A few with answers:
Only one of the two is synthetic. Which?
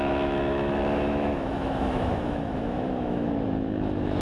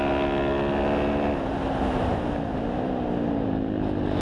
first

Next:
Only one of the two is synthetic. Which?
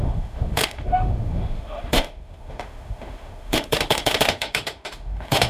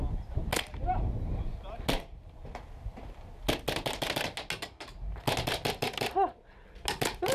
first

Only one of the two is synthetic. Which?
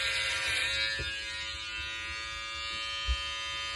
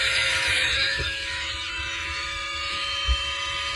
second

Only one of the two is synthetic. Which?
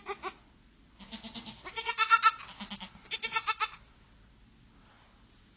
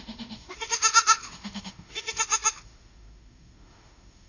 second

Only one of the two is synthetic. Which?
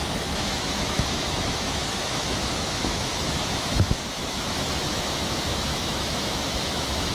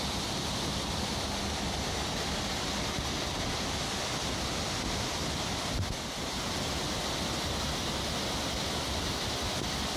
first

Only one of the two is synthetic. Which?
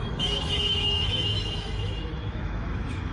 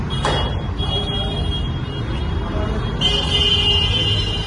first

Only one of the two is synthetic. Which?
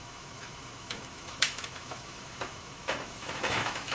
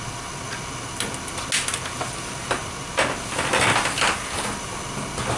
first